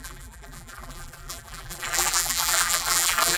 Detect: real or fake fake